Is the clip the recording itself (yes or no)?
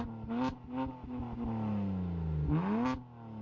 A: yes